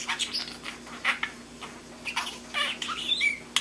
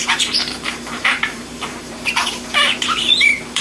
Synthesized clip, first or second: second